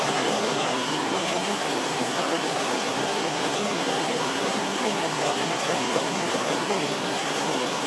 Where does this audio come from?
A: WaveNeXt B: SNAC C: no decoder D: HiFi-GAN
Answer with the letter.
B